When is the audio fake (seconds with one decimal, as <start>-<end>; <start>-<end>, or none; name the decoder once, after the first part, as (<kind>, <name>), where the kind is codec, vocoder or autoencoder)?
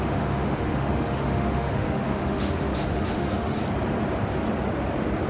0.0-3.6 (autoencoder, DAC-VAE)